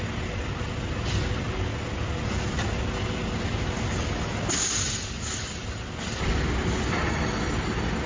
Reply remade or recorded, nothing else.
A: recorded